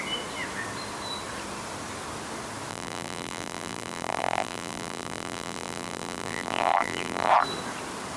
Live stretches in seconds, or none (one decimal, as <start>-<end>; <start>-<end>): 0.0-2.7; 7.3-8.2